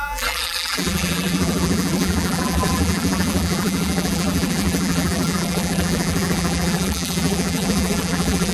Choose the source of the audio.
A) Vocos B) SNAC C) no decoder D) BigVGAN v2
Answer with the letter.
D